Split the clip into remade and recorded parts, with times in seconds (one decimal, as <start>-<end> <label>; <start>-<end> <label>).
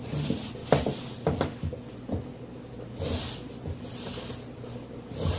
0.0-5.4 recorded